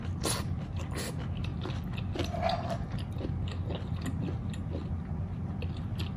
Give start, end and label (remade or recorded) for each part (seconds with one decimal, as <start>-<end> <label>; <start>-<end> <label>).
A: 0.0-6.2 recorded